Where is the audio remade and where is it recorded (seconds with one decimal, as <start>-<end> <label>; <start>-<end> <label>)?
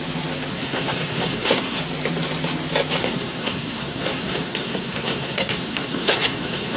0.0-0.5 recorded; 0.5-1.8 remade; 1.8-3.0 recorded; 3.0-6.8 remade